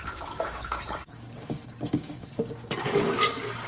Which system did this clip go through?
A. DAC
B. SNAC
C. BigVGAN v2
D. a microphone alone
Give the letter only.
A